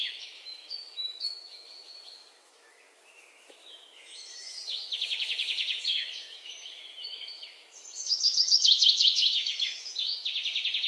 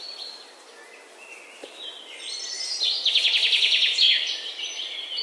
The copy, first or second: first